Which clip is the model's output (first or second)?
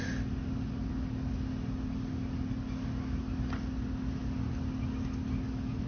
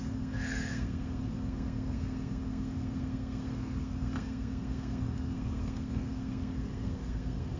second